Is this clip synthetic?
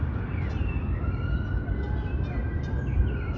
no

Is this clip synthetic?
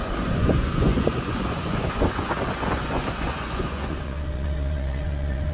yes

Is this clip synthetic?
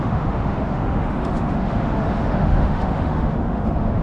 yes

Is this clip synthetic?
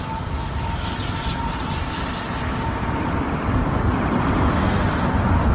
no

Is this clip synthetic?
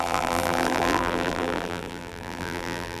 yes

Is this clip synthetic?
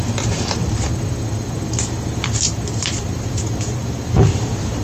yes